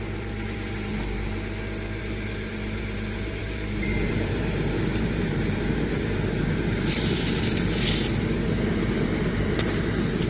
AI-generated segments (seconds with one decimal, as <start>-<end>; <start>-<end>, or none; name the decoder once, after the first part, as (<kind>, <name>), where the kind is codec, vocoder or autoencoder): 0.0-0.9 (vocoder, BigVGAN v2); 2.0-10.3